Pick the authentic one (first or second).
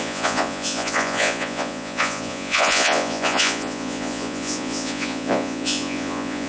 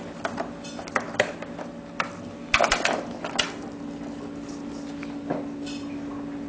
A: second